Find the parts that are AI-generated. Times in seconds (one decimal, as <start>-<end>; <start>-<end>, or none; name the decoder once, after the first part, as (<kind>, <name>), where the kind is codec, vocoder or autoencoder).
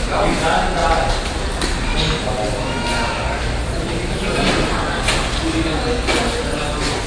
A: none